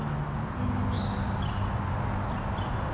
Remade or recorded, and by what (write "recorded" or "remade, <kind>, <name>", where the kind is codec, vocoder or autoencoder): recorded